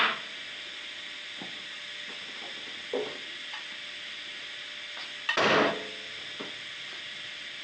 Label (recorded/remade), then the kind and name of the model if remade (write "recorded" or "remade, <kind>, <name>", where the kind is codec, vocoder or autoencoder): recorded